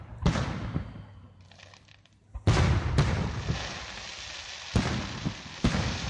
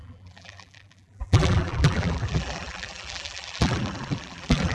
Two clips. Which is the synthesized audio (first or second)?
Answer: second